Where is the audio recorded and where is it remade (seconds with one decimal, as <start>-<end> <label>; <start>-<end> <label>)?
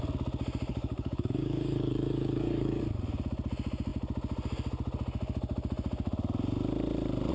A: 0.0-0.7 recorded; 0.7-2.8 remade; 2.8-7.3 recorded